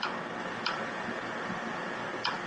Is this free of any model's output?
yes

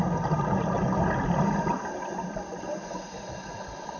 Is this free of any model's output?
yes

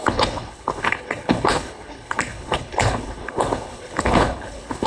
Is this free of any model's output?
no